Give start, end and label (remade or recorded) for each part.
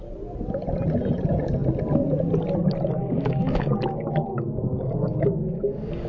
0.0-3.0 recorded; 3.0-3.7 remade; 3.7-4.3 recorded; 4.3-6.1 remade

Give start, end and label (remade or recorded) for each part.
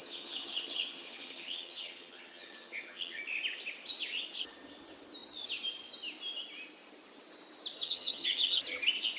0.0-3.2 remade; 3.2-7.8 recorded; 7.8-8.6 remade; 8.6-9.2 recorded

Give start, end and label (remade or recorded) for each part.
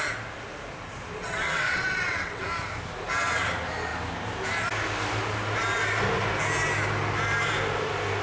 0.0-1.2 recorded; 1.2-2.4 remade; 2.4-8.2 recorded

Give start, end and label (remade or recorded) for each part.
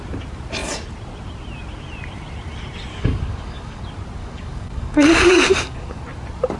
0.0-2.9 recorded; 2.9-3.8 remade; 3.8-4.2 recorded; 4.2-6.0 remade; 6.0-6.6 recorded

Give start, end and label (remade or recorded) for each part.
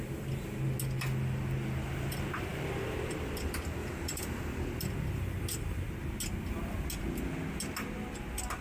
0.0-3.8 recorded; 3.8-4.4 remade; 4.4-8.6 recorded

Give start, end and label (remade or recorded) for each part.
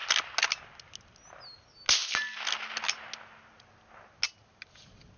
0.0-5.2 recorded